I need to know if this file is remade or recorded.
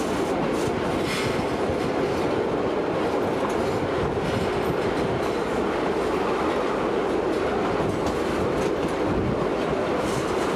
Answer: recorded